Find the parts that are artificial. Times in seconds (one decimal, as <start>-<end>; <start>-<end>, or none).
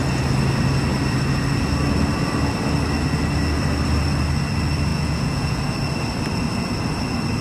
4.9-5.6